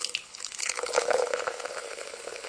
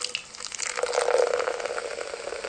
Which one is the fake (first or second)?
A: first